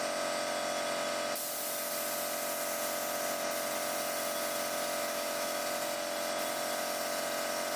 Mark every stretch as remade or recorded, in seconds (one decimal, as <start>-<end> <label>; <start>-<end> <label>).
0.0-5.0 recorded; 5.0-5.6 remade; 5.6-7.8 recorded